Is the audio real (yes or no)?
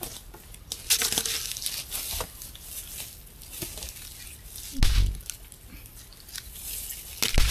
yes